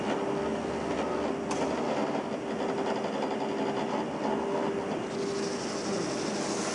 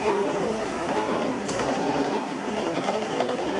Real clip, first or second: first